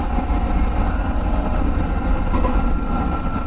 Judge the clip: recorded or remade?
recorded